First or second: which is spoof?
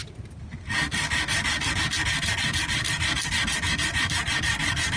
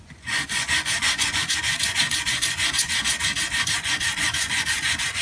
second